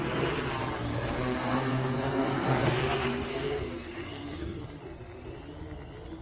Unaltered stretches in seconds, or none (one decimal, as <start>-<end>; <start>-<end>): 0.0-0.9; 4.6-6.2